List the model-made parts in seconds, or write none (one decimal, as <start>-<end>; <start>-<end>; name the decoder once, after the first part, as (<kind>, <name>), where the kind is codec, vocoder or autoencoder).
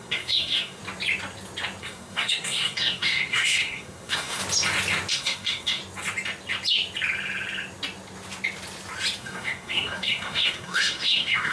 0.0-0.8 (codec, SNAC); 1.8-4.4; 5.1-5.8; 9.2-11.5